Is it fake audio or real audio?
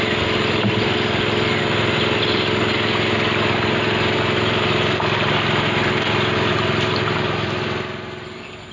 real